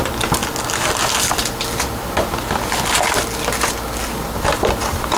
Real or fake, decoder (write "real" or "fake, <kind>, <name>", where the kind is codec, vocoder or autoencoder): real